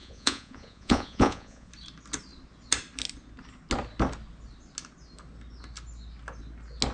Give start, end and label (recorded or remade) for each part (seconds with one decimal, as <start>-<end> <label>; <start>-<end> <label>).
0.0-1.7 remade; 1.7-6.9 recorded